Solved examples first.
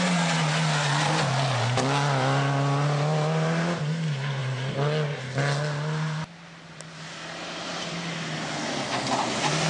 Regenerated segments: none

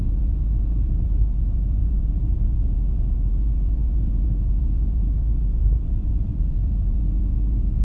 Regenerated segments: 1.8-2.6 (vocoder, BigVGAN v2); 5.6-7.0

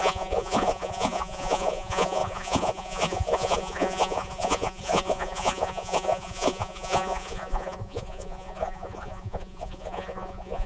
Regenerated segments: 0.0-10.7 (vocoder, Vocos)

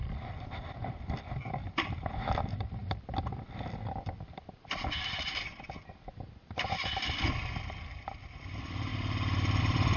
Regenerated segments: 0.0-2.8 (vocoder, BigVGAN v2); 7.2-10.0

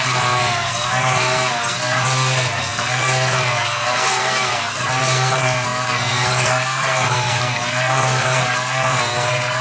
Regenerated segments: 0.0-9.6 (codec, SNAC)